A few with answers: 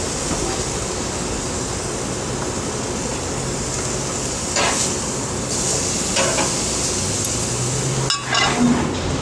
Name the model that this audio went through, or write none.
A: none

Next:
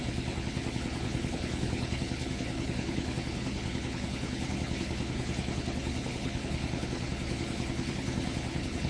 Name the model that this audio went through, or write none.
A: codec, HILCodec